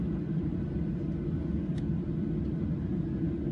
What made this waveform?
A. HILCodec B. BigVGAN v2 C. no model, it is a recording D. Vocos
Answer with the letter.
C